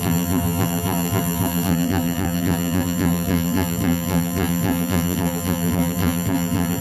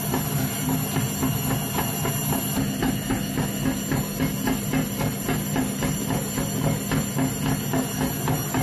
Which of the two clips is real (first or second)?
second